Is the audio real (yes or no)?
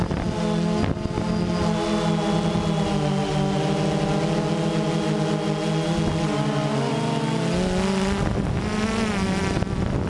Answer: yes